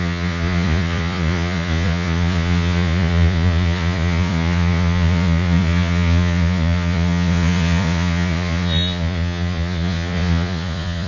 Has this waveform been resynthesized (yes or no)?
yes